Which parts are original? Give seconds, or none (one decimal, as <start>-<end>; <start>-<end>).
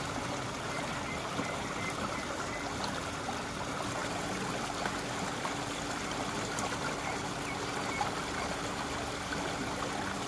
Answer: 0.0-10.3